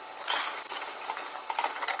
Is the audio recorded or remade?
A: recorded